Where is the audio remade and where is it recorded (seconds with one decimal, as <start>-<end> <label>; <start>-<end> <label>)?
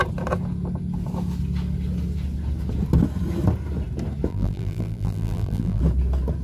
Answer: 0.0-4.3 recorded; 4.3-5.8 remade; 5.8-6.4 recorded